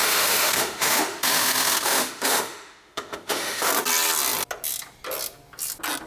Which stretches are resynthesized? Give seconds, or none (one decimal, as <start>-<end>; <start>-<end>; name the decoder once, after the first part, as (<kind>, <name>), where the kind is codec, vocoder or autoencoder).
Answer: 0.0-3.7 (autoencoder, DAC-VAE)